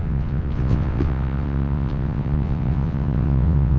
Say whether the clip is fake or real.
fake